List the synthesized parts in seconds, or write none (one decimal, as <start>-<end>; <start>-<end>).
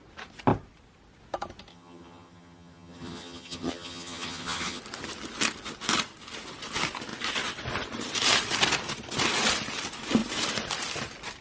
1.7-4.8